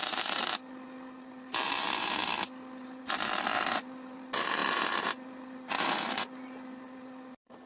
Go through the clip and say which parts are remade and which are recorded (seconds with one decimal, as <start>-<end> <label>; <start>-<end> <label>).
0.0-2.2 remade; 2.2-2.8 recorded; 2.8-7.7 remade